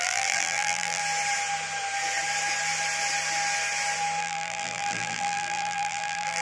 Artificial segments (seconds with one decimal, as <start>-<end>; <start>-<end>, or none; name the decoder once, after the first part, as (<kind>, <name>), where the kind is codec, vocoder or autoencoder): 0.0-1.0 (vocoder, BigVGAN v2); 4.2-6.4